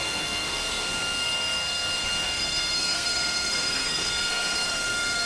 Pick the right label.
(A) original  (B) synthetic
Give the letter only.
B